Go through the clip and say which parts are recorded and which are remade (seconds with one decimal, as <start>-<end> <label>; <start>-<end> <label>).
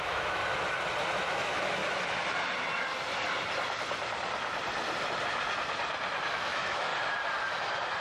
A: 0.0-0.4 remade; 0.4-1.3 recorded; 1.3-1.8 remade; 1.8-6.3 recorded; 6.3-6.9 remade; 6.9-8.0 recorded